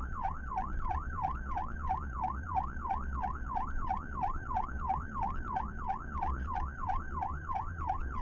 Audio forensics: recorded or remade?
remade